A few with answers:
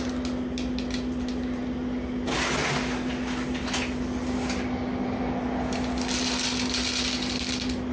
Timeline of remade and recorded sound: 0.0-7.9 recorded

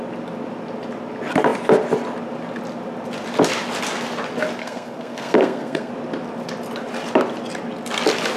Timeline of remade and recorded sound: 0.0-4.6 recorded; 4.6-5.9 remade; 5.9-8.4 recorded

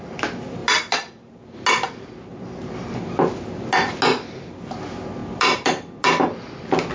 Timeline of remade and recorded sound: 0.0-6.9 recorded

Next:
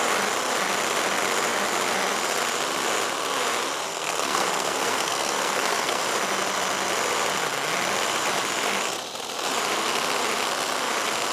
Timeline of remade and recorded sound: 0.0-3.9 recorded; 3.9-6.0 remade; 6.0-11.3 recorded

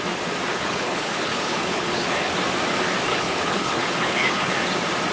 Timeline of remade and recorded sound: 0.0-0.5 recorded; 0.5-2.3 remade; 2.3-3.1 recorded; 3.1-4.5 remade; 4.5-5.1 recorded